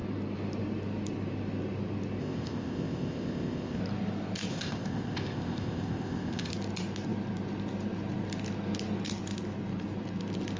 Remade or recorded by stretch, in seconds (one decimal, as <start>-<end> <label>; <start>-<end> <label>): 0.0-2.2 recorded; 2.2-3.8 remade; 3.8-4.5 recorded; 4.5-6.5 remade; 6.5-10.6 recorded